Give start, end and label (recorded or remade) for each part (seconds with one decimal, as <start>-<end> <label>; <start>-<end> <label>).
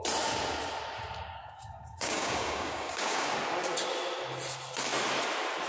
0.0-1.4 recorded; 1.4-3.3 remade; 3.3-5.7 recorded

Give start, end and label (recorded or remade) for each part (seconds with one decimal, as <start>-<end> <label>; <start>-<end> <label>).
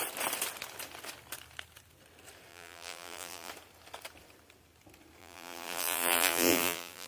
0.0-2.5 recorded; 2.5-3.5 remade; 3.5-5.2 recorded; 5.2-7.1 remade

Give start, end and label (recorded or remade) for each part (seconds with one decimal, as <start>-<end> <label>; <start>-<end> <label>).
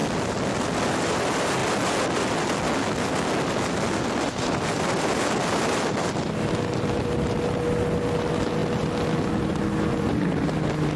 0.0-11.0 recorded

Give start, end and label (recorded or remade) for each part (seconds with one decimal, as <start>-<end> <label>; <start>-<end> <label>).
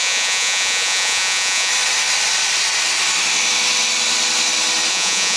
0.0-1.7 remade; 1.7-4.9 recorded; 4.9-5.4 remade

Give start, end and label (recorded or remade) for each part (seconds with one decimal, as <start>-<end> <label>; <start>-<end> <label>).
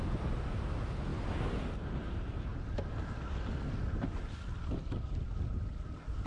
0.0-6.3 recorded